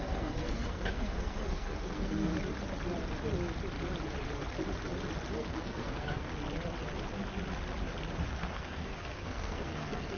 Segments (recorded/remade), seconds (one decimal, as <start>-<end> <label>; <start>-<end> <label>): 0.0-2.3 remade; 2.3-5.3 recorded; 5.3-6.3 remade; 6.3-8.3 recorded; 8.3-10.2 remade